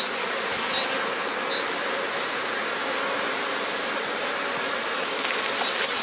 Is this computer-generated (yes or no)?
no